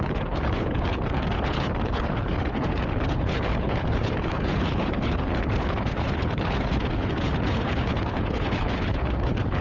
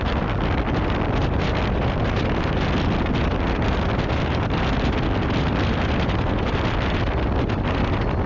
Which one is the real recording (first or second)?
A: second